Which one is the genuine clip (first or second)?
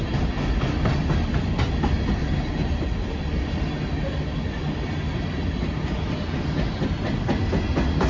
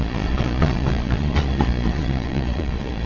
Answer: first